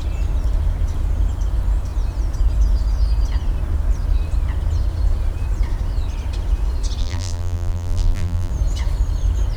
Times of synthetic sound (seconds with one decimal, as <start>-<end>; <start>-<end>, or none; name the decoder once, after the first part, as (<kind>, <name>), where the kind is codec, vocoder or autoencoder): 7.0-8.5 (vocoder, BigVGAN v2)